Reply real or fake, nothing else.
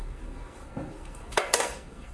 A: fake